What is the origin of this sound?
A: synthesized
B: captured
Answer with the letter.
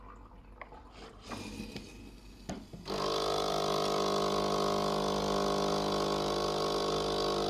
B